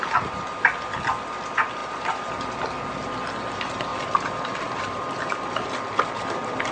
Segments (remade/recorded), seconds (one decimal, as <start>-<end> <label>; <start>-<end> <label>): 0.0-3.9 recorded; 3.9-6.7 remade